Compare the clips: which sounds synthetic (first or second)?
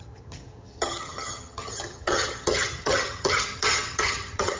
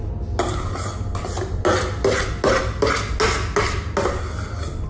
first